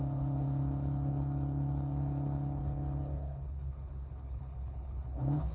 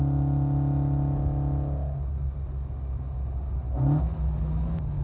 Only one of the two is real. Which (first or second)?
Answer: second